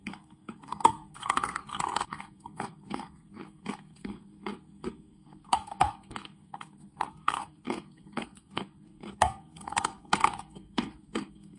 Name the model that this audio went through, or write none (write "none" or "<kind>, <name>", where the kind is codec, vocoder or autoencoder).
codec, SNAC